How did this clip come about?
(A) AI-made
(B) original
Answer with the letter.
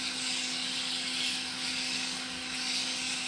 A